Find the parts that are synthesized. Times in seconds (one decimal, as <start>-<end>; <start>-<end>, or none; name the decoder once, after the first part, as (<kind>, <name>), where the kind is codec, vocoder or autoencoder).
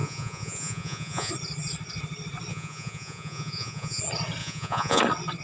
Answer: 0.0-1.3 (vocoder, Vocos); 2.5-4.0; 4.4-5.0